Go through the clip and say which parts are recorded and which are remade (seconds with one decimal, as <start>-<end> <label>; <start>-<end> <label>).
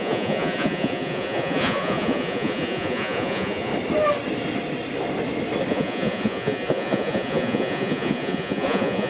0.0-3.7 remade; 3.7-5.7 recorded; 5.7-9.1 remade